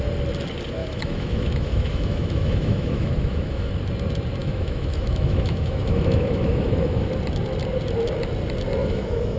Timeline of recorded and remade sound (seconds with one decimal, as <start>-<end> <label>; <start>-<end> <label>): 0.0-0.8 recorded; 0.8-3.7 remade; 3.7-4.4 recorded; 4.4-7.1 remade; 7.1-8.8 recorded; 8.8-9.4 remade